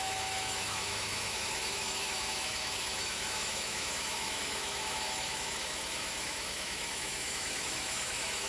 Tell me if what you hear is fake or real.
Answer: fake